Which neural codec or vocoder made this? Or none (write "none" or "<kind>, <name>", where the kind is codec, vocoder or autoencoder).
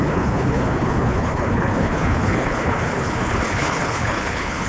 codec, HILCodec